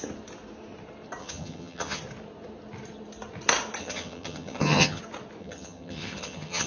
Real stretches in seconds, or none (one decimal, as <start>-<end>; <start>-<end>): 0.0-1.2; 2.0-3.8; 5.0-5.4